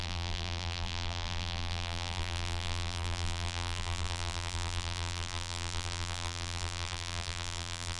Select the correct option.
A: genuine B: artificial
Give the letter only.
B